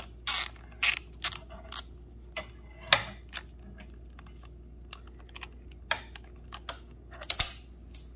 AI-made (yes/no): no